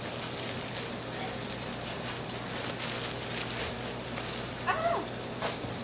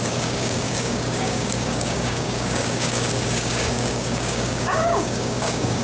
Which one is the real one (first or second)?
first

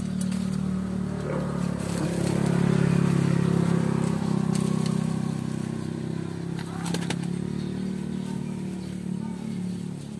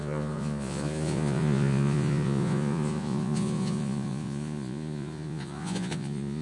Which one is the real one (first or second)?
first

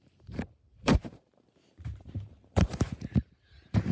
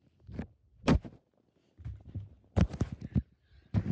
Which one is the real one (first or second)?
second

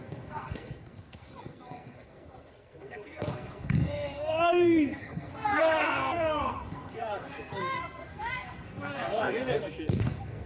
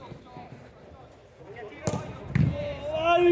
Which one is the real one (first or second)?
second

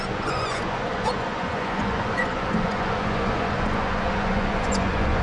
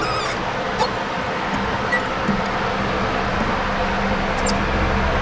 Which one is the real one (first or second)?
second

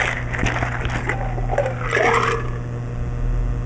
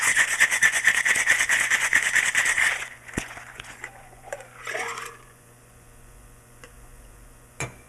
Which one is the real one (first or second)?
first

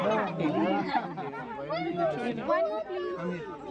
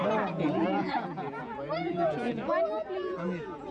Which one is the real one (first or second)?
first